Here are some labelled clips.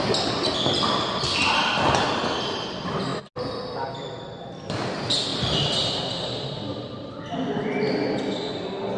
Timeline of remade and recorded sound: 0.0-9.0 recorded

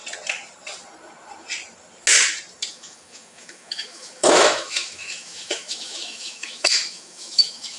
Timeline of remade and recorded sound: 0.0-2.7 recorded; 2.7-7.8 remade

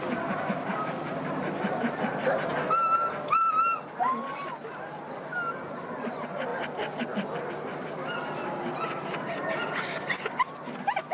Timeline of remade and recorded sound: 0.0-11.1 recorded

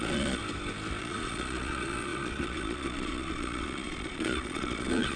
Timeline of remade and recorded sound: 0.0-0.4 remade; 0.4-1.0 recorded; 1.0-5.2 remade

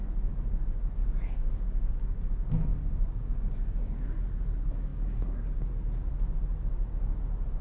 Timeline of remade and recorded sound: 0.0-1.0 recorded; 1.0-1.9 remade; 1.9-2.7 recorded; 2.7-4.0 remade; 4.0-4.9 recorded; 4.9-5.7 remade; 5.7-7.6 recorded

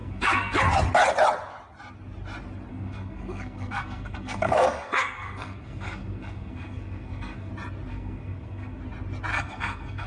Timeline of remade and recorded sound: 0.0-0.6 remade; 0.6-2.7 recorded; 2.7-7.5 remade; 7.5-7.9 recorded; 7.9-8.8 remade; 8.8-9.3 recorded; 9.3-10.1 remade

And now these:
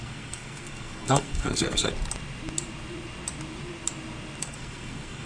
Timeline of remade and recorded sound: 0.0-1.9 remade; 1.9-4.4 recorded; 4.4-5.3 remade